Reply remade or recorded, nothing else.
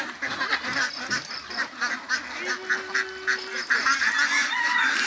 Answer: recorded